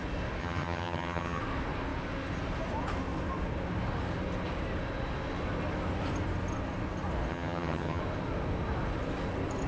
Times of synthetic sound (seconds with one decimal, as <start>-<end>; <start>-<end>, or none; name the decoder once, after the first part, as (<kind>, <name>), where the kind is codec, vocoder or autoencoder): 0.4-1.4 (vocoder, HiFi-GAN); 7.3-8.0